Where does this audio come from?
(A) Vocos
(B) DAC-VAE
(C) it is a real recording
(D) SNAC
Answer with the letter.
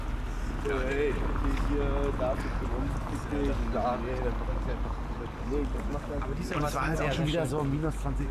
C